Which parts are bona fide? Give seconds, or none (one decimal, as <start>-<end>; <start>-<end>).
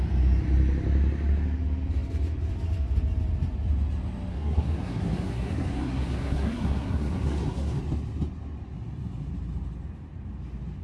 0.0-4.3; 7.8-10.8